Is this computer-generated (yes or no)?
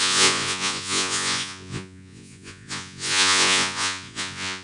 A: yes